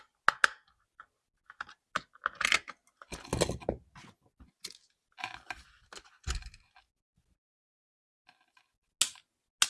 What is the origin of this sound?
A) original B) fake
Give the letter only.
A